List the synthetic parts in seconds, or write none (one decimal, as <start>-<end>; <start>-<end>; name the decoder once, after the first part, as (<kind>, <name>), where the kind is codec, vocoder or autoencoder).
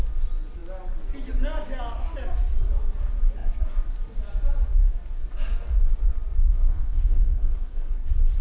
6.4-7.9 (codec, SNAC)